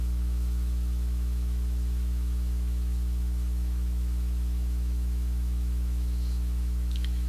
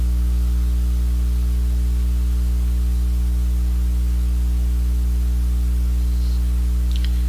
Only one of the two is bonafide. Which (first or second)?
second